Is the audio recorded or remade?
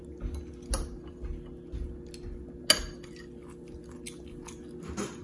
recorded